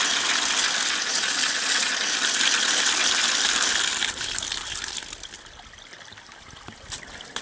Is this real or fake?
real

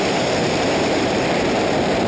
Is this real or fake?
fake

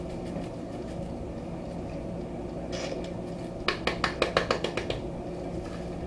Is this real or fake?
real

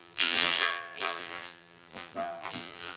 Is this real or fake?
fake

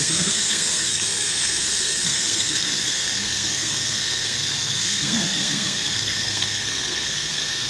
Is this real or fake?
fake